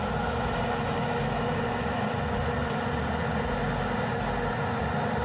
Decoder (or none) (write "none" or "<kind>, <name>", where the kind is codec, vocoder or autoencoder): none